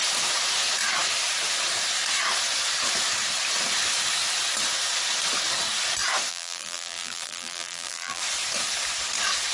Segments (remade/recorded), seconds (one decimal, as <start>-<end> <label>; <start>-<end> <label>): 0.0-6.3 recorded; 6.3-8.2 remade; 8.2-9.5 recorded